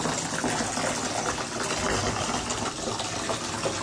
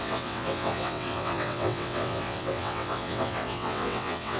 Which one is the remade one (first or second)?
second